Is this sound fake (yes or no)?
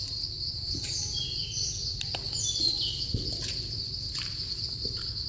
no